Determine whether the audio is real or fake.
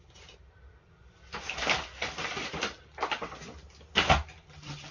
real